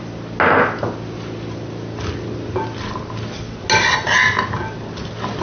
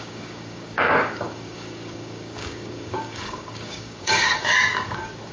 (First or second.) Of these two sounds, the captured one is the first